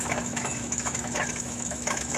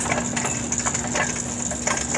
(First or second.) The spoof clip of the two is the first